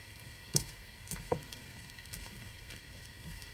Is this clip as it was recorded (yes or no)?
no